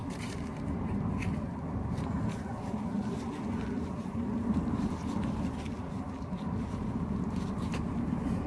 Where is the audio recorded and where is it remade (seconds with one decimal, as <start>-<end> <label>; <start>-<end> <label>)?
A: 0.0-8.5 remade